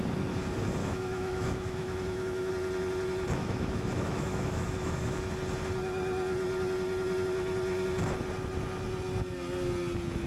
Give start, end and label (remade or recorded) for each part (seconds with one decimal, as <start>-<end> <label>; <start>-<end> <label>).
0.0-0.8 recorded; 0.8-2.5 remade; 2.5-3.4 recorded; 3.4-5.3 remade; 5.3-10.3 recorded